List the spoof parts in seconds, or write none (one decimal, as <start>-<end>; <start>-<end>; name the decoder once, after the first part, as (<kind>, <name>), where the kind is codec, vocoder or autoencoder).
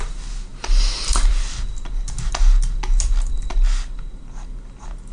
none